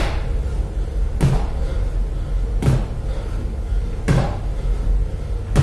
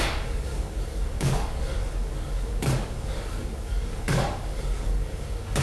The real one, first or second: first